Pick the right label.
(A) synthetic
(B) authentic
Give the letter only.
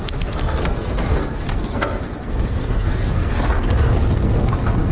A